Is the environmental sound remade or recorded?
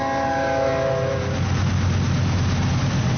recorded